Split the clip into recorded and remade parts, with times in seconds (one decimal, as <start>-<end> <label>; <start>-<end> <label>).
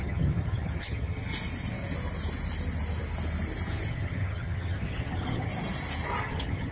0.0-1.3 remade; 1.3-3.9 recorded; 3.9-5.5 remade; 5.5-6.2 recorded; 6.2-6.7 remade